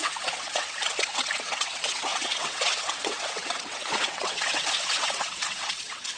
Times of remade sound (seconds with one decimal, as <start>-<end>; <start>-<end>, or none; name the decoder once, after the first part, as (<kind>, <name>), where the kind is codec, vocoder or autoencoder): 0.0-6.2 (vocoder, WaveNeXt)